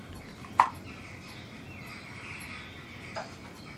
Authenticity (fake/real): real